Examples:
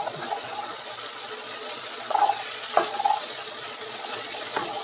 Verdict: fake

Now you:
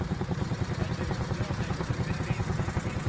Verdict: real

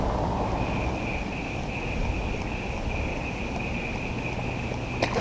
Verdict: real